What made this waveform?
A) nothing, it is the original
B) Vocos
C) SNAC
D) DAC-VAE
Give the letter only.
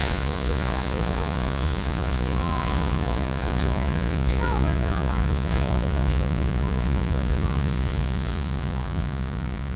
B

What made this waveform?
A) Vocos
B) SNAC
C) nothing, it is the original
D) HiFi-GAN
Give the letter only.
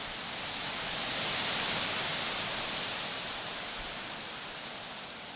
C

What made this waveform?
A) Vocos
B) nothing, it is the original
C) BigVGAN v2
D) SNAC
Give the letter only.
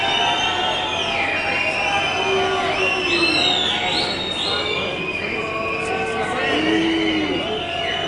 B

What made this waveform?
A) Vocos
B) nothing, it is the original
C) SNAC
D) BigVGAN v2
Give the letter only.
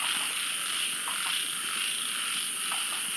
B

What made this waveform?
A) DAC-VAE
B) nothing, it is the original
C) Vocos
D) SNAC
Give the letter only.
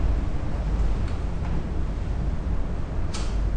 B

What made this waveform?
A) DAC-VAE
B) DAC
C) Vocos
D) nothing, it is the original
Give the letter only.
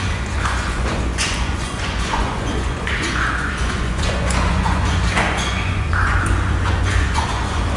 C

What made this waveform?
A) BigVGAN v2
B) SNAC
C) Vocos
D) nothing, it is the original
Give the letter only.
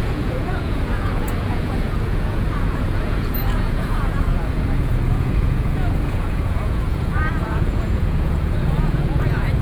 C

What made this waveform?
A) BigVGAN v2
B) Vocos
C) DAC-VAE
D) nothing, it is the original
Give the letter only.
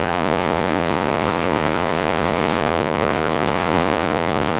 B